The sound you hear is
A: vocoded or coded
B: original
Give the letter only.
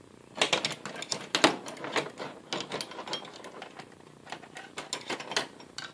B